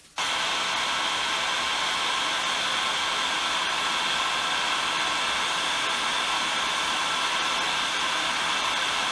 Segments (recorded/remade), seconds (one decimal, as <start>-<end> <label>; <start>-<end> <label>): 0.0-9.1 recorded